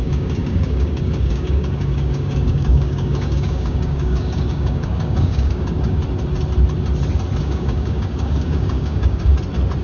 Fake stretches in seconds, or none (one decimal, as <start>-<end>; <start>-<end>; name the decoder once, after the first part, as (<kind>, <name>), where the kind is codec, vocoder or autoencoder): 0.0-6.0 (codec, DAC); 7.4-9.3